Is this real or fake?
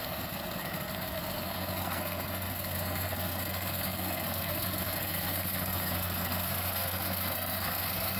fake